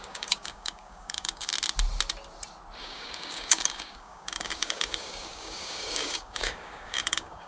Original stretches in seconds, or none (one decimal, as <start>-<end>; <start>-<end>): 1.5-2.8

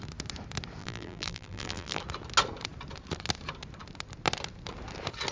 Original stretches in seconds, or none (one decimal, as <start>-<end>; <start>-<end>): 0.0-0.8; 2.0-5.3

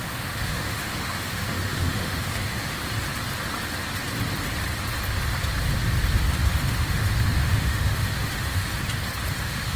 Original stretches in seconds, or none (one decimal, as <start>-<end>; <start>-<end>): 2.8-6.6; 8.7-9.4

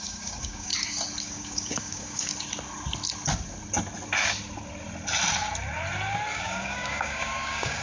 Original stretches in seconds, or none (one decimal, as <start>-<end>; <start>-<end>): 0.7-1.2; 2.3-6.3

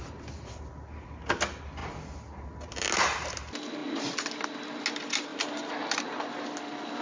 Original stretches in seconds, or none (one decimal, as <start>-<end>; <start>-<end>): 0.0-7.0

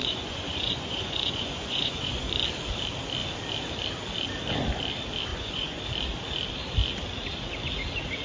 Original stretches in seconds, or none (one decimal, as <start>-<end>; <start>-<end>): 2.3-5.3; 5.8-8.2

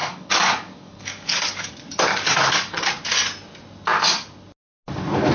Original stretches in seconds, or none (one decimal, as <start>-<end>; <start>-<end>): 1.7-2.1; 2.9-5.3

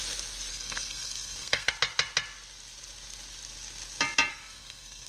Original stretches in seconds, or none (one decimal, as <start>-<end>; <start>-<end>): 0.0-0.5; 1.7-4.3